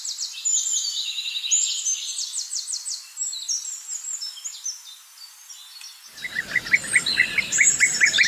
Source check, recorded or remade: recorded